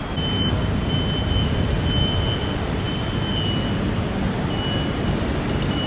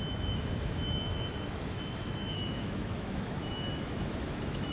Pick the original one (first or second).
first